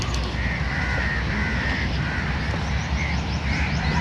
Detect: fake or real real